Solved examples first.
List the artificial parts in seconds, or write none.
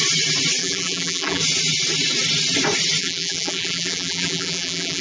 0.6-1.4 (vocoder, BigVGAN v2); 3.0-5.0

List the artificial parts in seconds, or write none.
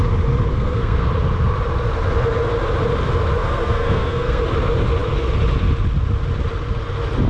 0.5-1.1 (codec, SNAC); 3.4-4.4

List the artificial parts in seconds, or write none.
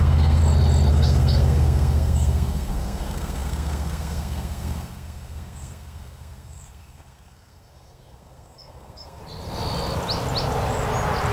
0.0-0.4 (codec, SNAC); 0.9-9.2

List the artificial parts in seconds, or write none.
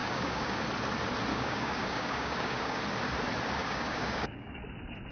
0.0-0.6 (codec, DAC); 1.3-2.8; 3.6-4.6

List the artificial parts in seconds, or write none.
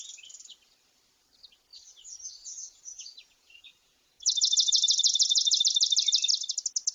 1.7-5.6 (vocoder, Vocos)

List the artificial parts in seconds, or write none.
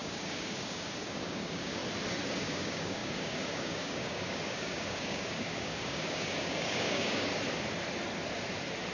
0.0-1.8 (codec, DAC); 2.3-7.3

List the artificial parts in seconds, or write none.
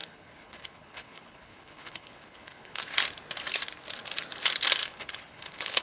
0.0-2.8 (codec, HILCodec); 4.8-5.8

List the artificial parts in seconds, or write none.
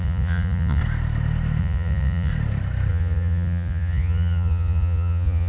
0.0-0.8 (vocoder, Vocos); 1.6-2.3; 2.9-5.5